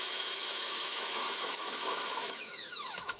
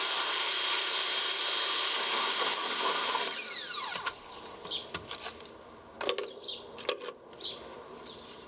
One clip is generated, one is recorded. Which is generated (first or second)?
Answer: first